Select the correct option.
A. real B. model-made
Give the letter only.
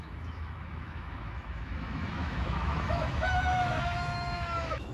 B